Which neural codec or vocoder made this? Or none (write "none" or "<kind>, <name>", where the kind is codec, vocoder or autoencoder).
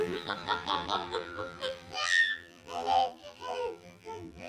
vocoder, BigVGAN v2